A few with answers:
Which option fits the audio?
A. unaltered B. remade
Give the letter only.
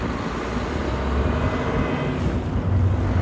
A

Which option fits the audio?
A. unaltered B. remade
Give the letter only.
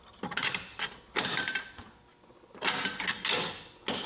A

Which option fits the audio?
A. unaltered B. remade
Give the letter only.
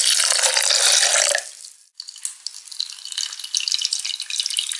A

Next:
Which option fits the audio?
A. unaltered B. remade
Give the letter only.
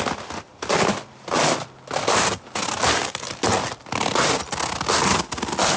A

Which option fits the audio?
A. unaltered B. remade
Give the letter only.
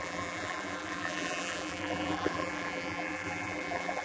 B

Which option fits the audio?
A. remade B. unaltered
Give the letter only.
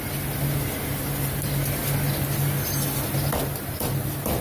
B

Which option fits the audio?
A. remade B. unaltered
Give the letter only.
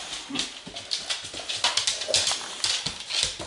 B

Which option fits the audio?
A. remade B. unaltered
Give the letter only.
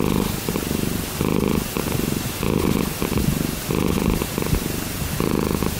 B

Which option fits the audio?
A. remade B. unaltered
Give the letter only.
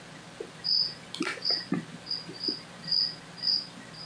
B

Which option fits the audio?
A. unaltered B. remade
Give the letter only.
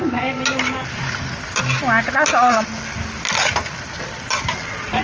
A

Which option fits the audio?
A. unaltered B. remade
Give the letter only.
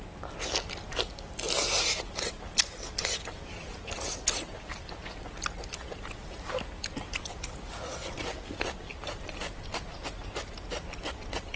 A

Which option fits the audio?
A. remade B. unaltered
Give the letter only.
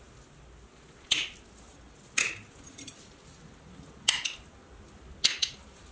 B